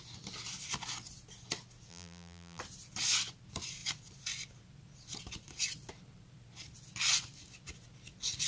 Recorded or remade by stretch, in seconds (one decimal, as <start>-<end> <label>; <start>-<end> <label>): 0.0-1.9 recorded; 1.9-2.6 remade; 2.6-8.5 recorded